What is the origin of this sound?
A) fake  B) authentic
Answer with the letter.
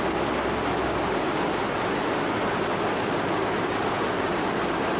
B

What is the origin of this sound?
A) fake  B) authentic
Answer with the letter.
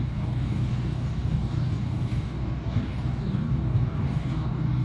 A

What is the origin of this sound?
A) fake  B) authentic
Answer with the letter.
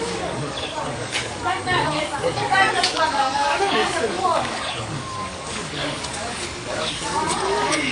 A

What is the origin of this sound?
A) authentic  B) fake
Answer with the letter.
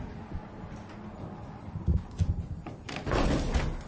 B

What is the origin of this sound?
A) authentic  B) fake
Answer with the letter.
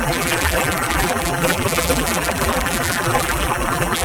B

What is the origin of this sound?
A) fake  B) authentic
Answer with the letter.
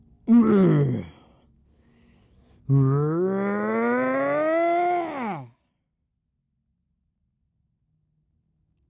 B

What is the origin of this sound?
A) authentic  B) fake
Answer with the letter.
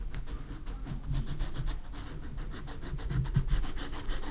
A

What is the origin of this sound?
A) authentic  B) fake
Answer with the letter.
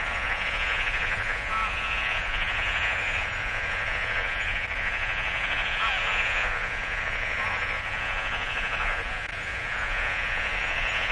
B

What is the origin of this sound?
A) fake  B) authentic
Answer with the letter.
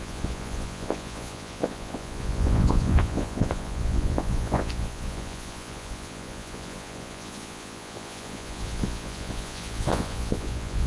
A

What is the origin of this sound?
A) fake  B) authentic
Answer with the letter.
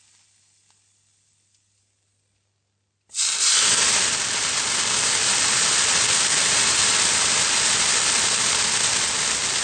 B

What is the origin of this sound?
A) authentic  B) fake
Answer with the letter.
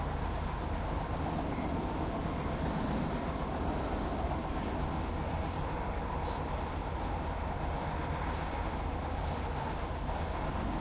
A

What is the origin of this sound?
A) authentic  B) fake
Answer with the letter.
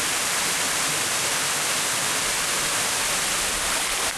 A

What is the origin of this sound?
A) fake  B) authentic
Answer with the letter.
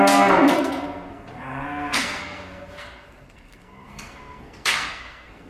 A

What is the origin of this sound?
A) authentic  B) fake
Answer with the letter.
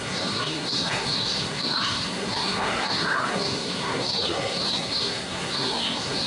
B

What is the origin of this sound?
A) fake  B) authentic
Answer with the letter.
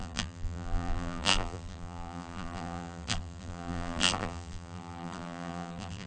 A